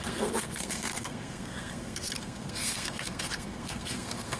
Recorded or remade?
remade